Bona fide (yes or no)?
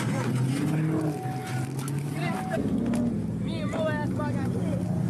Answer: yes